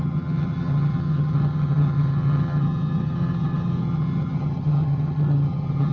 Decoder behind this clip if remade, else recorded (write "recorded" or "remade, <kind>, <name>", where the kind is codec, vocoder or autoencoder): remade, vocoder, HiFi-GAN